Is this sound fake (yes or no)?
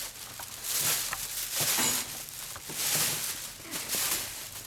no